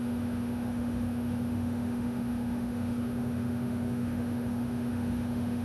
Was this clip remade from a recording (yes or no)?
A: yes